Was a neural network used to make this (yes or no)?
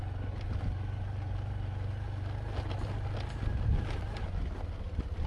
no